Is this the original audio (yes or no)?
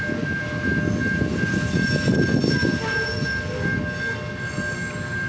yes